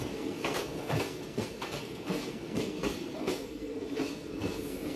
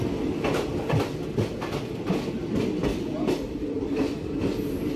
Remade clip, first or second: first